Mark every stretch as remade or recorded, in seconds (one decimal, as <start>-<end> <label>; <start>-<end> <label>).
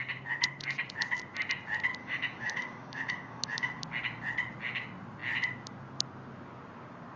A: 0.0-2.0 recorded; 2.0-3.8 remade; 3.8-7.2 recorded